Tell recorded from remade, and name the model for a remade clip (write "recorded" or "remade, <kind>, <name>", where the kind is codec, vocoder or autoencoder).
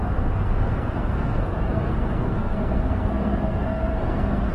remade, codec, SNAC